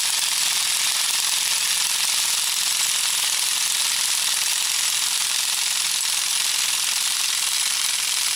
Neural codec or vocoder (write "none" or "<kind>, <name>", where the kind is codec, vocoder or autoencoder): none